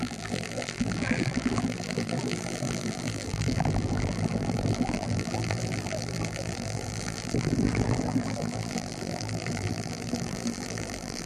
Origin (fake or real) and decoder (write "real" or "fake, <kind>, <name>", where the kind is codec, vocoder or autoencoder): fake, vocoder, BigVGAN v2